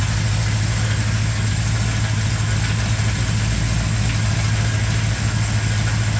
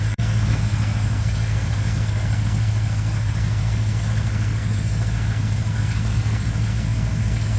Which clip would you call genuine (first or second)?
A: first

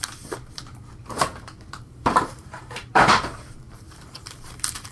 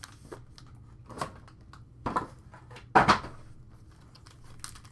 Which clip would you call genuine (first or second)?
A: second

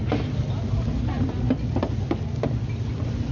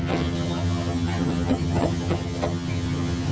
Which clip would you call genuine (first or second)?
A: first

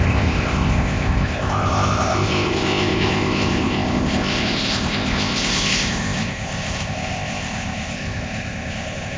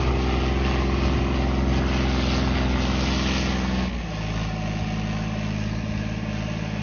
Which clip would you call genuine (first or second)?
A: second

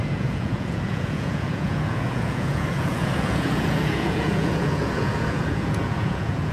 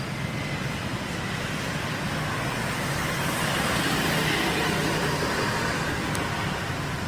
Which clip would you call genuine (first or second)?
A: second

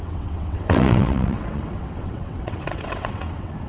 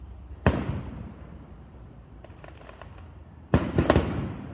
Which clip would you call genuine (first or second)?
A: second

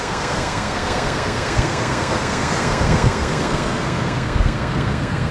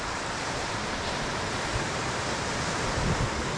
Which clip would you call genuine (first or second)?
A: second